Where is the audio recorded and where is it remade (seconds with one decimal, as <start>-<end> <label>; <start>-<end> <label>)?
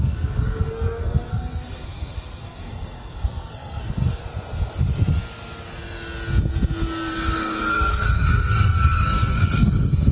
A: 0.0-4.2 remade; 4.2-7.1 recorded; 7.1-10.1 remade